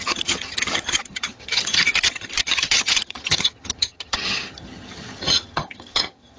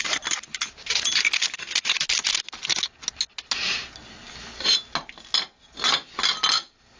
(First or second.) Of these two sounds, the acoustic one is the second